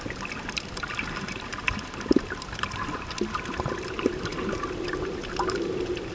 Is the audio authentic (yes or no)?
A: yes